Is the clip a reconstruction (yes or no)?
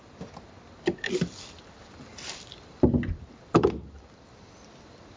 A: no